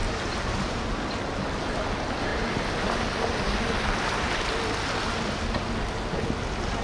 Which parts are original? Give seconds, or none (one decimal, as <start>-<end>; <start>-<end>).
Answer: 0.8-6.8